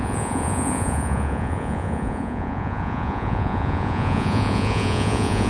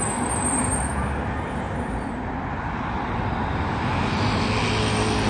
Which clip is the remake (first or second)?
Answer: first